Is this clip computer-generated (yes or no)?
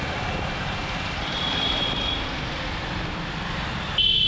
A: yes